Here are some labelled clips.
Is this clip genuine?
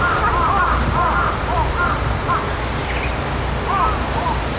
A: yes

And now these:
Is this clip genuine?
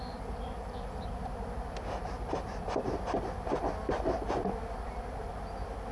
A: yes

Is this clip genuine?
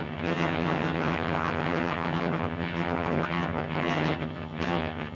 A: no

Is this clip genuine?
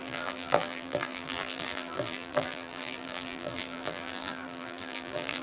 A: no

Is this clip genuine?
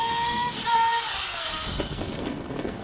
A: no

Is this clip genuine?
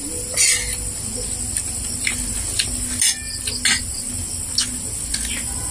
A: yes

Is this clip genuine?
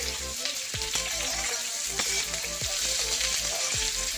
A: yes